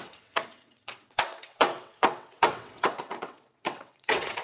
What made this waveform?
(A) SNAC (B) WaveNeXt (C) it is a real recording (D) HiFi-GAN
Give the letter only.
B